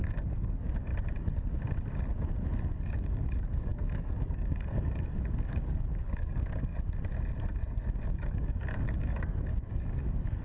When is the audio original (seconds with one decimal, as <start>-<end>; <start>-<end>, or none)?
0.9-2.6; 6.7-8.0